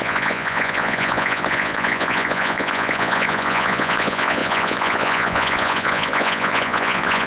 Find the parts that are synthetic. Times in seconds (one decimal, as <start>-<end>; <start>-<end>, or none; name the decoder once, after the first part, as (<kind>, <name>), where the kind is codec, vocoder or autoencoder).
0.0-7.3 (vocoder, Vocos)